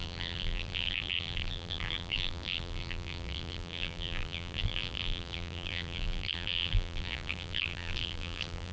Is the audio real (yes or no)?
no